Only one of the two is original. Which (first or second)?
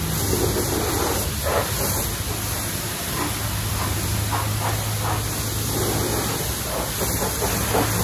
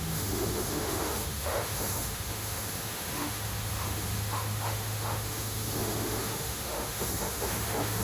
first